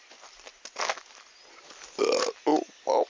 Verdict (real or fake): real